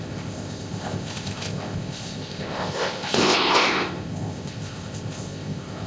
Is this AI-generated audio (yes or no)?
yes